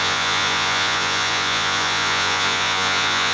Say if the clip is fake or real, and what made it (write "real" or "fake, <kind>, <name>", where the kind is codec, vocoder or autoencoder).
fake, vocoder, Vocos